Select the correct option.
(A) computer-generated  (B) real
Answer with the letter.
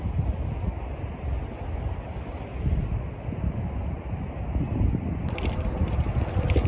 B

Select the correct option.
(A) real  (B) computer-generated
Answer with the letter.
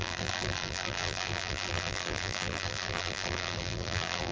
B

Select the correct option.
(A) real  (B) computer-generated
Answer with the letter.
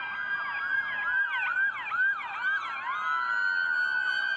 A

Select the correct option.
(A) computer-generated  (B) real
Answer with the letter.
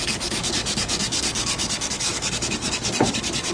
A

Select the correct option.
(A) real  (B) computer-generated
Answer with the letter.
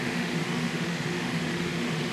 B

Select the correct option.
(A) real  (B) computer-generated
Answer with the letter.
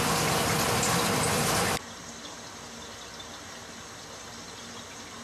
B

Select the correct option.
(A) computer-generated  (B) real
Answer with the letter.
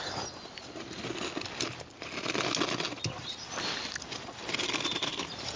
B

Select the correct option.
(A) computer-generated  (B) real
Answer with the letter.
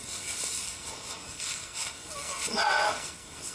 A